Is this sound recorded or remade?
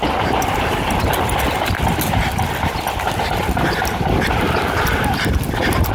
recorded